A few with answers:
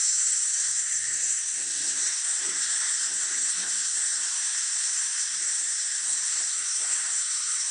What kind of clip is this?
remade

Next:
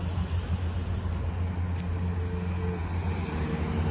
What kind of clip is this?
recorded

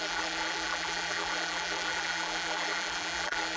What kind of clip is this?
remade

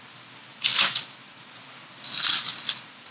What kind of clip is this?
recorded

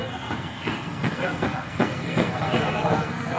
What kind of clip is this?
remade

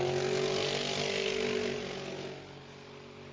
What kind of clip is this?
recorded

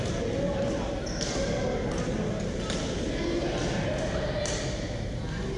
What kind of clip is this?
recorded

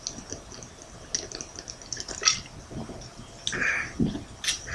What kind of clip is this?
recorded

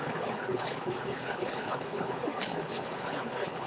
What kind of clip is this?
remade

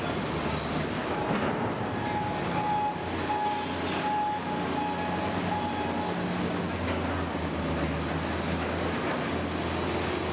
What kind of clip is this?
recorded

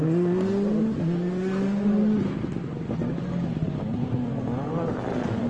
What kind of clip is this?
recorded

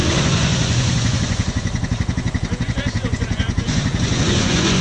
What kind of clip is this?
remade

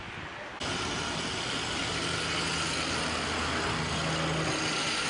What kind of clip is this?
recorded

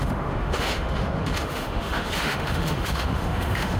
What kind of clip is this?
remade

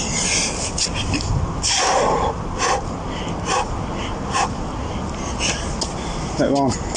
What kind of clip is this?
recorded